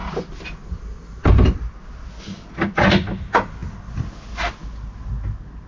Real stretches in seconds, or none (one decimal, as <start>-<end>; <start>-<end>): 2.2-5.7